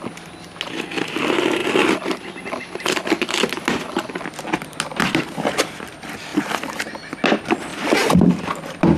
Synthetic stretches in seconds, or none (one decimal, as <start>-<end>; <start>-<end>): none